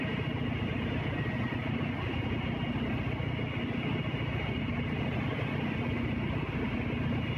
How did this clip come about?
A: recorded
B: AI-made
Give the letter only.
A